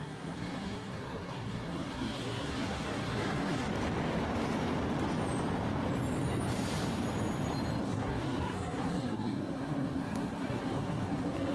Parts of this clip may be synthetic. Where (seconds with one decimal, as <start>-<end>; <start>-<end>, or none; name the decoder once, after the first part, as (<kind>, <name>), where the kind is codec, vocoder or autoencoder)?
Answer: 0.0-3.7 (codec, SNAC); 7.8-11.5